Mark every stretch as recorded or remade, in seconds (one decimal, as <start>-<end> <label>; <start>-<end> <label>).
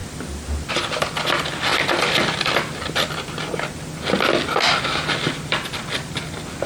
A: 0.0-6.7 recorded